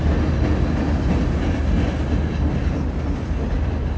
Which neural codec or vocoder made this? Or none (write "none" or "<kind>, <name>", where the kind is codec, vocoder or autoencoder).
none